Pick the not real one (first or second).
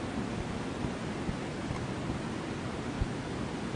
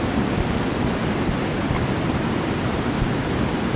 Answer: second